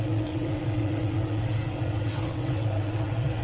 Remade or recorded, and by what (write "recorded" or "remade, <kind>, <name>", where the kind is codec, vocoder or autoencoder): remade, vocoder, WaveNeXt